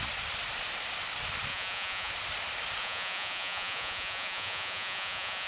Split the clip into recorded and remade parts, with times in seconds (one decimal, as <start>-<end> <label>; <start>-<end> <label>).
0.0-1.5 recorded; 1.5-2.1 remade; 2.1-2.8 recorded; 2.8-5.5 remade